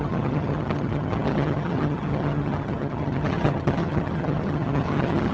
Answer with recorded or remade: remade